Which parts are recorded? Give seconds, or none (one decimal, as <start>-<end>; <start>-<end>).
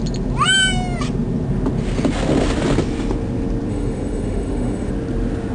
0.0-3.7; 4.9-5.5